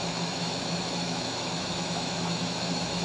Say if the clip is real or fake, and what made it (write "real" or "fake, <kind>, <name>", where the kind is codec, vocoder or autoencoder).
fake, autoencoder, DAC-VAE